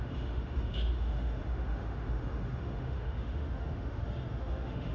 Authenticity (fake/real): fake